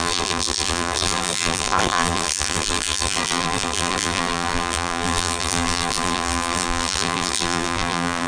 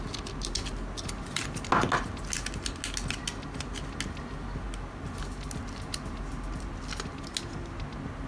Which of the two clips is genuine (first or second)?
second